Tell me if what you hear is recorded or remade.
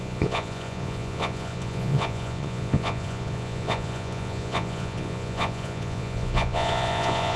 remade